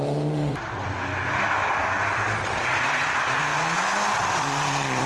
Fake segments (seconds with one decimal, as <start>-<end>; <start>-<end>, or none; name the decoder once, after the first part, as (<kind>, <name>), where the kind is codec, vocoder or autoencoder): 0.0-3.5 (vocoder, BigVGAN v2); 4.3-5.1